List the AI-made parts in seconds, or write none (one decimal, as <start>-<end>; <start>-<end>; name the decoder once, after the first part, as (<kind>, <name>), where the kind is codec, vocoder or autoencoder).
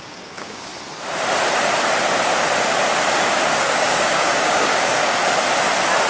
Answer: 0.0-0.7 (codec, DAC); 3.6-5.2